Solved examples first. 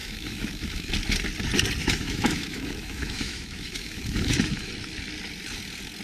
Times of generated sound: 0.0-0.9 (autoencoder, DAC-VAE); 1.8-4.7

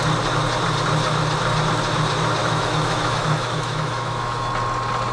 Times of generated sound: 2.4-4.5 (autoencoder, DAC-VAE)